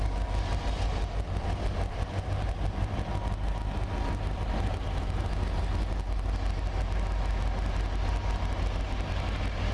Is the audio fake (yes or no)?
no